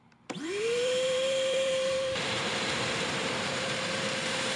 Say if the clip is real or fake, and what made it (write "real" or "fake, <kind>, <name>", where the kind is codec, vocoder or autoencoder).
fake, vocoder, BigVGAN v2